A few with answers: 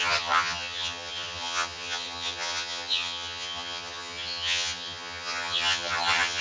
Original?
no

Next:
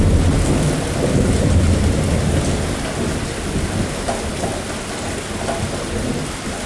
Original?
yes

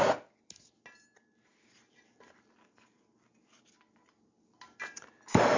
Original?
yes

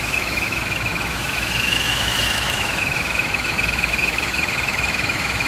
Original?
no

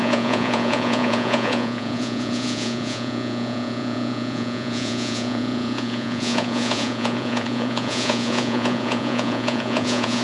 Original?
no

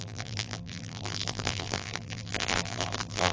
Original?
no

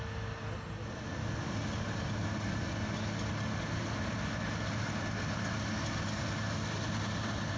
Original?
yes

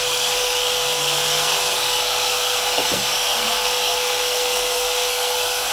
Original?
no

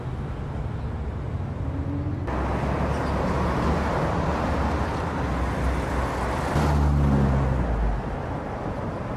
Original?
yes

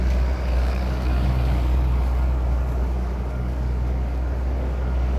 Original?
no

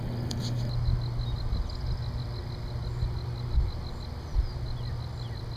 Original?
yes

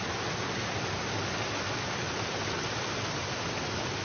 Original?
yes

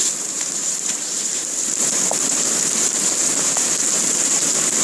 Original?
no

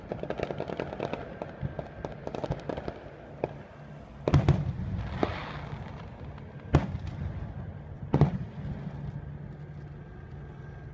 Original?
yes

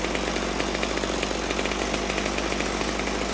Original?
yes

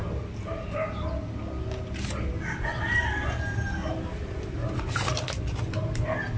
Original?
yes